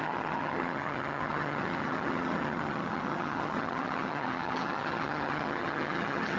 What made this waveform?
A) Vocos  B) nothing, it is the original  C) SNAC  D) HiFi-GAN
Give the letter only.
D